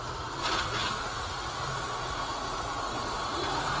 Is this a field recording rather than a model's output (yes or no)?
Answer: no